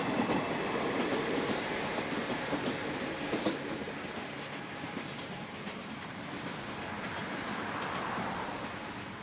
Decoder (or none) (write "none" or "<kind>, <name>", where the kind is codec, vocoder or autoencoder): none